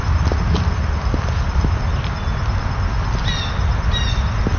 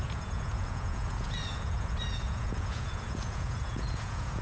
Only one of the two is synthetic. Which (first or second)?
second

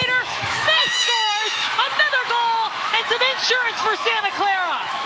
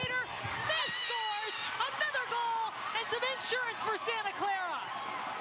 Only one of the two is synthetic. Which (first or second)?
first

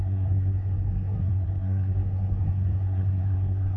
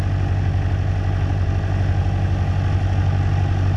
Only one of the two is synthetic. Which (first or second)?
first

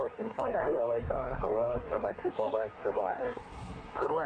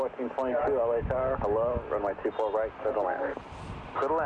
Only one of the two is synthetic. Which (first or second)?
first